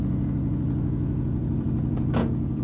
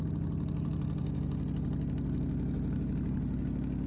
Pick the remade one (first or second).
first